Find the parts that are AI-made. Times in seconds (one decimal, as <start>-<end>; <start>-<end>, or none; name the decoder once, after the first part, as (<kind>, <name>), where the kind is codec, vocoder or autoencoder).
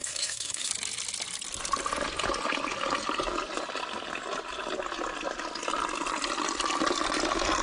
0.0-0.7 (codec, SNAC)